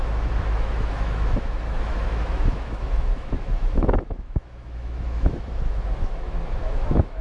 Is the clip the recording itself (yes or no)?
no